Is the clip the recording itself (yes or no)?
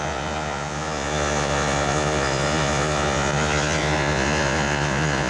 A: no